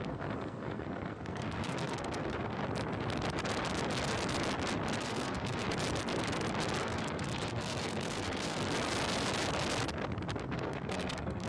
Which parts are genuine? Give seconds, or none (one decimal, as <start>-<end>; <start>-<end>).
2.6-5.0; 5.6-6.8; 8.6-10.4